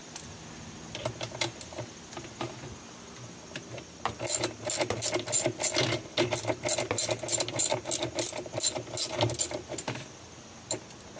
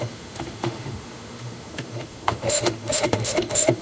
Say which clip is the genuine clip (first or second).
first